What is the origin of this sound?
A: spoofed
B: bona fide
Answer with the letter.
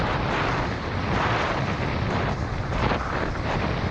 A